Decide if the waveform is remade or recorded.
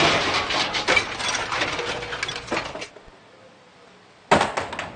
recorded